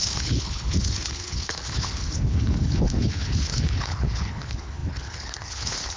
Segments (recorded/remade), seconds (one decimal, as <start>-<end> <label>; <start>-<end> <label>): 0.0-6.0 remade